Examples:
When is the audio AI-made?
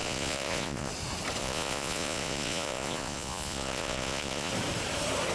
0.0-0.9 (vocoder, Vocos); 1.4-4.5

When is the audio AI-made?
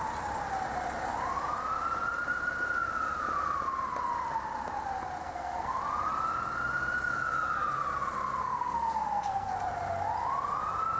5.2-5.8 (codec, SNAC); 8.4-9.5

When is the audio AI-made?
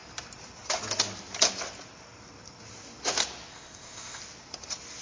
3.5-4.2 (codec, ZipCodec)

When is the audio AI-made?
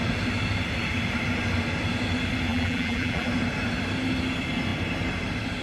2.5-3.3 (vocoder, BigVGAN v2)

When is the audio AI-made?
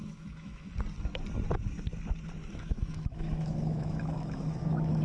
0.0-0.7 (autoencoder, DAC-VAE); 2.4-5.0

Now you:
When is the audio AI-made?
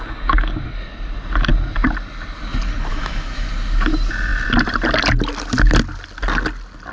2.9-3.5 (autoencoder, DAC-VAE)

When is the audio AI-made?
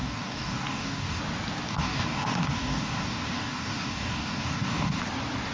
0.0-1.2 (codec, DAC); 1.7-5.0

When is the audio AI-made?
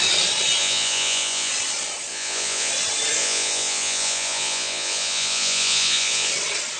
0.6-1.5 (vocoder, Vocos); 2.1-2.7; 3.2-6.3